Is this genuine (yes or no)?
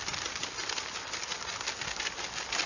yes